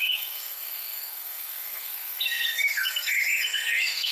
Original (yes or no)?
no